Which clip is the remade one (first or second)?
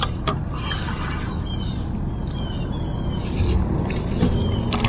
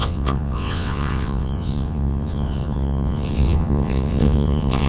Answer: second